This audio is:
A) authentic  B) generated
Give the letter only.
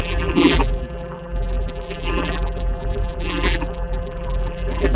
B